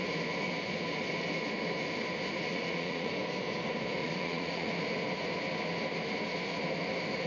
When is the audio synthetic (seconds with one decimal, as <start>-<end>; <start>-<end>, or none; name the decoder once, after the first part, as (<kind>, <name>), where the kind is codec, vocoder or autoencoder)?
2.5-3.1 (vocoder, Vocos); 4.0-4.7